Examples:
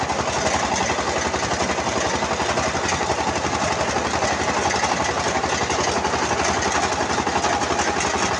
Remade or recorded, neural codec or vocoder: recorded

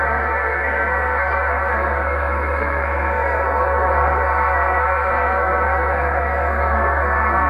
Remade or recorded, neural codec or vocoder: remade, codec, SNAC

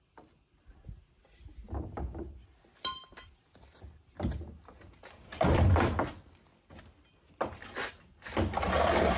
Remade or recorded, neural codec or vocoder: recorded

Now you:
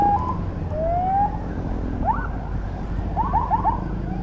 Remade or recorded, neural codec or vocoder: recorded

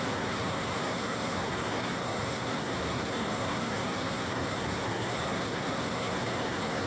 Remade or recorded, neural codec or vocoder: remade, codec, SNAC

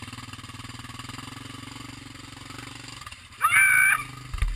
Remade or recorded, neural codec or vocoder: recorded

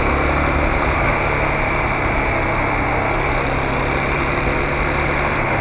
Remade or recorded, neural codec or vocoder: recorded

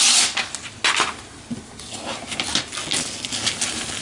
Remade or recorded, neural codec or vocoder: recorded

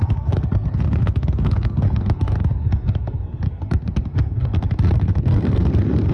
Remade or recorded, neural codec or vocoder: remade, codec, SNAC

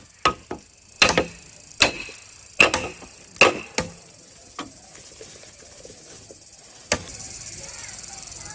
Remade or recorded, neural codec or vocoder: recorded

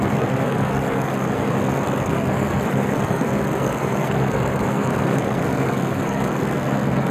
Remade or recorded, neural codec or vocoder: remade, codec, SNAC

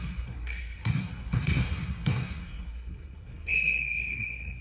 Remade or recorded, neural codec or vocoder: remade, codec, SNAC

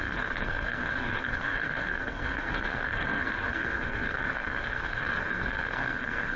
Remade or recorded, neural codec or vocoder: remade, codec, SNAC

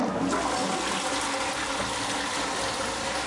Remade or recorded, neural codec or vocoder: recorded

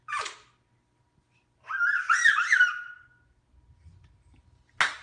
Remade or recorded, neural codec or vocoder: recorded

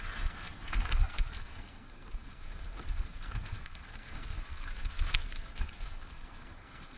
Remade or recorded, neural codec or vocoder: remade, codec, SNAC